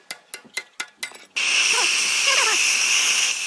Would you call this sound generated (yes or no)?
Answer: no